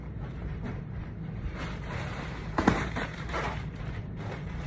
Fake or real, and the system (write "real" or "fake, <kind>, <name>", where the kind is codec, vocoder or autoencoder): fake, vocoder, BigVGAN v2